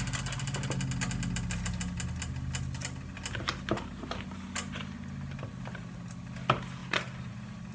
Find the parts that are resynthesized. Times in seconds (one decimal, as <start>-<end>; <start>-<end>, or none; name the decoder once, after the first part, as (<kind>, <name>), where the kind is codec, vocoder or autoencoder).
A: none